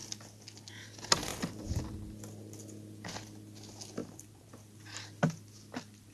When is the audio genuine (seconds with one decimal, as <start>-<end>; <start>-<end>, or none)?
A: 0.0-1.3; 1.8-4.0; 4.5-6.1